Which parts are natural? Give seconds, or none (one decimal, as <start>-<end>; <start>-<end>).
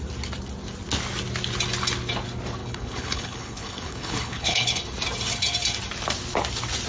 0.0-2.6; 4.8-6.9